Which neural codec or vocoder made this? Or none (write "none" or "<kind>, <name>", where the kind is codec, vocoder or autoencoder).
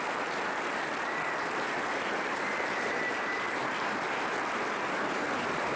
none